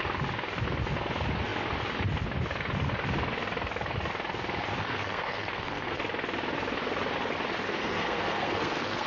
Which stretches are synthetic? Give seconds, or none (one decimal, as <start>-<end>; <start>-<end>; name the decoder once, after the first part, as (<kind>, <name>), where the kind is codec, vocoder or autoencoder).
4.8-6.0 (codec, SNAC); 7.7-9.1